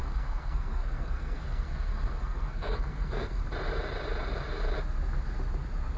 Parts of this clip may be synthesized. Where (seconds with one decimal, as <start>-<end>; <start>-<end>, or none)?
0.0-3.4